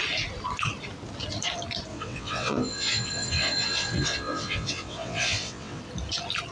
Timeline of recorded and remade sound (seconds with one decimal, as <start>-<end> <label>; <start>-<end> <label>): 0.0-1.9 recorded; 1.9-5.8 remade; 5.8-6.5 recorded